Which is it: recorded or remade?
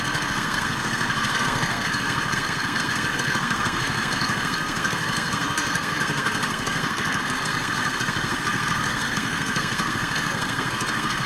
remade